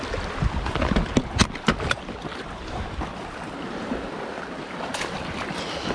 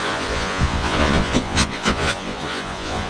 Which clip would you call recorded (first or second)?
first